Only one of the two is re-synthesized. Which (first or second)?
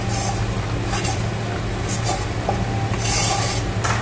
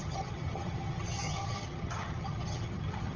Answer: second